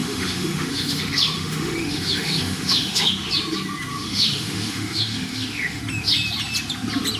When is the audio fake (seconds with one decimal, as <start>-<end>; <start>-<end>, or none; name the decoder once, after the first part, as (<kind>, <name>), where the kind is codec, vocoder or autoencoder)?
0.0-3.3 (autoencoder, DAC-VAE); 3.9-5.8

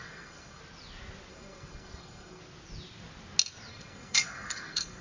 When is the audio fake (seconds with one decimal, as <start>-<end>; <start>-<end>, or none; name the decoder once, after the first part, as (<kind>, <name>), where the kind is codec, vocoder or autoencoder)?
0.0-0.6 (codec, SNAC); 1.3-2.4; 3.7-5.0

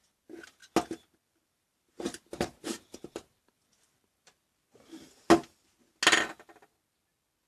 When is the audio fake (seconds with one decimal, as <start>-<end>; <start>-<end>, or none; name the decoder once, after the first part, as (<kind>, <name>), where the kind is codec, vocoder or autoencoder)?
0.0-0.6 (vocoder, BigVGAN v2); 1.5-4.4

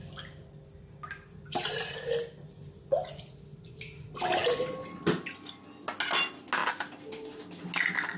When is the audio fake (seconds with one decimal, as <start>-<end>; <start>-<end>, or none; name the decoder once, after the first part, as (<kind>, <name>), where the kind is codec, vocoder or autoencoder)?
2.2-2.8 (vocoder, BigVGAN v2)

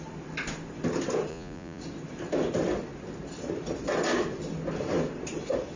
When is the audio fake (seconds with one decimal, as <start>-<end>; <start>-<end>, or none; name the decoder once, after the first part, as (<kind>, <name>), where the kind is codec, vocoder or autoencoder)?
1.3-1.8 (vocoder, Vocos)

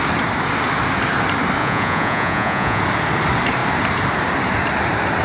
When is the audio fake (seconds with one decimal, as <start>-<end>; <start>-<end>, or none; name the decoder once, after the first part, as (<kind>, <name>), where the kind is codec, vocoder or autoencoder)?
1.6-2.8 (vocoder, Vocos)

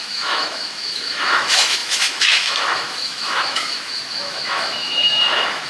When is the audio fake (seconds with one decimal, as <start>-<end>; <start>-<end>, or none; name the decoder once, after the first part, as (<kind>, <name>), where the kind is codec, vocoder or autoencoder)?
0.0-5.7 (autoencoder, DAC-VAE)